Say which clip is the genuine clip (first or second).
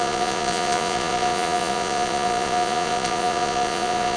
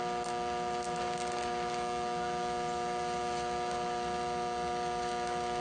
second